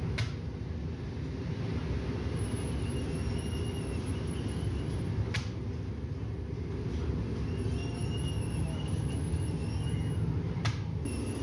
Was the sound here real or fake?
real